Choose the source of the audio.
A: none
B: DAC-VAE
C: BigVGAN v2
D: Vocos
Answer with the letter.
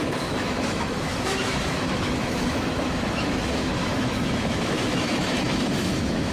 B